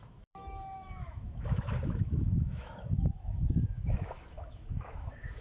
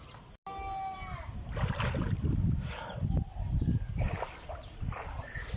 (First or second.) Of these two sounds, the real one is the second